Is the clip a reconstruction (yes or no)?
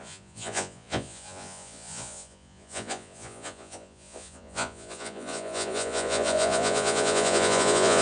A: yes